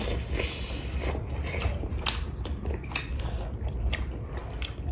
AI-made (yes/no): no